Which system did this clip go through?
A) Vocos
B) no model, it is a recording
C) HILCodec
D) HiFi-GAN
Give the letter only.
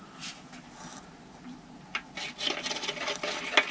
B